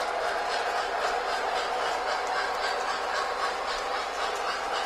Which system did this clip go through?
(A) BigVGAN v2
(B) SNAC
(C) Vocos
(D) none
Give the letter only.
D